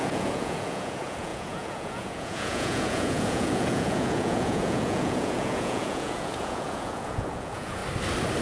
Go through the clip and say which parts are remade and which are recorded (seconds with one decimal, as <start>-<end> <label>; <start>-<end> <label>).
0.0-7.8 remade; 7.8-8.4 recorded